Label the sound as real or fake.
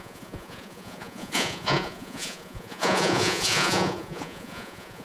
fake